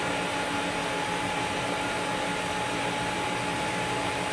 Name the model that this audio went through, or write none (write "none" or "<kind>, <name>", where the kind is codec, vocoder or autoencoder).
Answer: none